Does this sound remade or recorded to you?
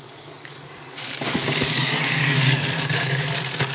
remade